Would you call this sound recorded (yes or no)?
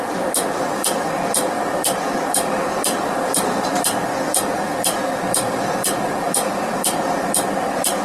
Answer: no